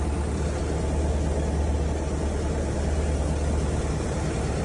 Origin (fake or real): real